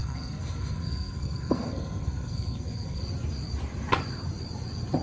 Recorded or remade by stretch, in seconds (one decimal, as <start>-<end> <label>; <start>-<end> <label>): 0.0-3.0 remade; 3.0-5.0 recorded